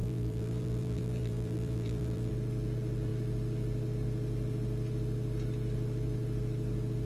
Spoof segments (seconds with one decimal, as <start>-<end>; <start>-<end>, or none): 0.0-2.3